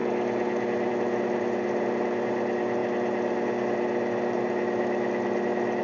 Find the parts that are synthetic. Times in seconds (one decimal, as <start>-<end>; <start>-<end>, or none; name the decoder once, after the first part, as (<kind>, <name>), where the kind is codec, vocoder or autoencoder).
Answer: none